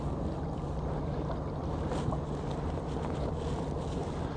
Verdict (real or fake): real